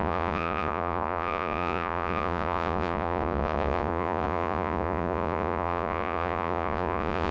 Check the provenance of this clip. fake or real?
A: fake